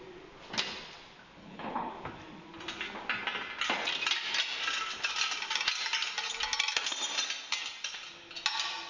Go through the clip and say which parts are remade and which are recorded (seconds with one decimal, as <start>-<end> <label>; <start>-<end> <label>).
0.0-1.4 recorded; 1.4-1.9 remade; 1.9-8.9 recorded